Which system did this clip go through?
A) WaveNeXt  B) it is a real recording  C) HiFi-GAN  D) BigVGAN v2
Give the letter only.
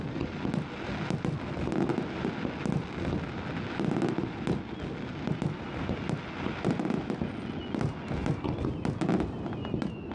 B